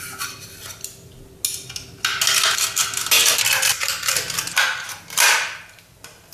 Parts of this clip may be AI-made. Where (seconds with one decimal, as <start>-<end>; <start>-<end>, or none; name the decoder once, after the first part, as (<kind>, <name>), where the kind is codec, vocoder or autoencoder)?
none